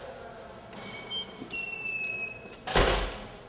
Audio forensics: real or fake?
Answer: real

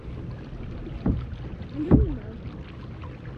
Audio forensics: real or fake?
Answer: real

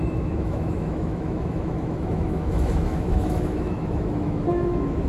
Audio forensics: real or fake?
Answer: fake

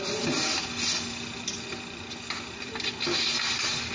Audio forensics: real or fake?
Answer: real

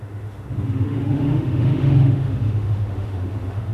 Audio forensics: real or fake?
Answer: fake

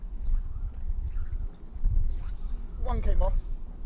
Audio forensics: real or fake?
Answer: real